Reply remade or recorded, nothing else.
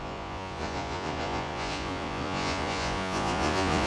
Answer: remade